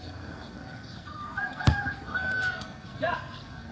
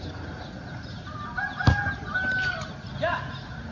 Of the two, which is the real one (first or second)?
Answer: second